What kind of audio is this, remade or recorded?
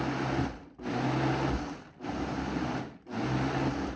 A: recorded